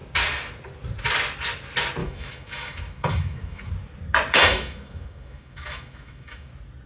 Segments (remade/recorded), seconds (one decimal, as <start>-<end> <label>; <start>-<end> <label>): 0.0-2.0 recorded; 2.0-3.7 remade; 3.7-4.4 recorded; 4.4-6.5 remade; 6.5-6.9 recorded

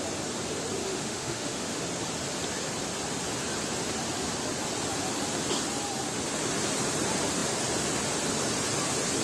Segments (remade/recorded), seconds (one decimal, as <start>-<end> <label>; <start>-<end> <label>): 0.0-0.8 recorded; 0.8-1.8 remade; 1.8-9.2 recorded

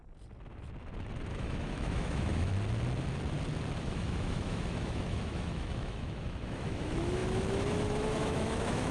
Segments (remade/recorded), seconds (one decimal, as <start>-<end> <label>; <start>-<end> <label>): 0.0-1.3 recorded; 1.3-2.5 remade; 2.5-3.8 recorded; 3.8-8.9 remade

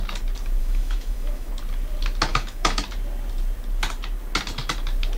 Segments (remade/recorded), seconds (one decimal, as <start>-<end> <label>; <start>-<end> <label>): 0.0-0.6 recorded; 0.6-1.5 remade; 1.5-2.3 recorded; 2.3-2.8 remade; 2.8-5.2 recorded

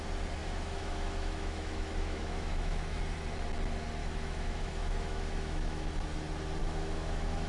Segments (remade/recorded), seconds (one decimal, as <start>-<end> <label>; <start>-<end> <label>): 0.0-0.4 recorded; 0.4-3.0 remade; 3.0-4.0 recorded; 4.0-5.9 remade; 5.9-6.6 recorded; 6.6-7.5 remade

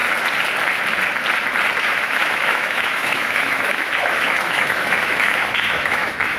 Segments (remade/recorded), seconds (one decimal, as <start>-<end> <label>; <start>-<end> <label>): 0.0-1.8 recorded; 1.8-6.4 remade

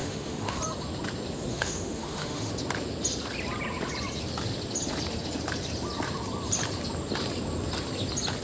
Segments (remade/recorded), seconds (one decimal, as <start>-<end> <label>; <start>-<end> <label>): 0.0-0.6 remade; 0.6-1.5 recorded; 1.5-2.5 remade; 2.5-8.4 recorded

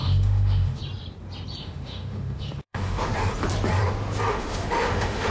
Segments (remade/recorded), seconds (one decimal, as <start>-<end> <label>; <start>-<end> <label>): 0.0-0.8 remade; 0.8-1.6 recorded; 1.6-3.1 remade; 3.1-4.3 recorded; 4.3-5.3 remade